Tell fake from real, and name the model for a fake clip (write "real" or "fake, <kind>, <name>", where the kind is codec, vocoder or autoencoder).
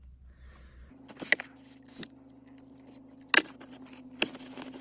real